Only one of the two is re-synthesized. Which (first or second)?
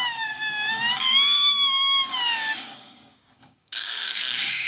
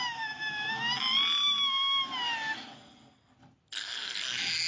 first